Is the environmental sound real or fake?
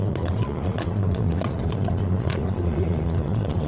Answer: fake